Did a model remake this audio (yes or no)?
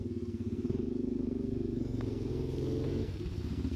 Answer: yes